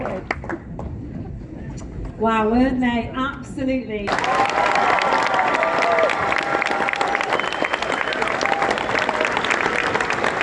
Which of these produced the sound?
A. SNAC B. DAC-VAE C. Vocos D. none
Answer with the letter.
D